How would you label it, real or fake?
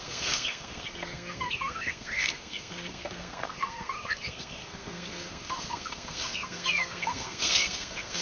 fake